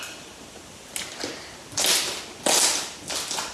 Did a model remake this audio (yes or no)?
no